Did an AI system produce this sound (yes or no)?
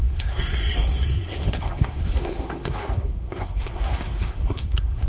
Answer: yes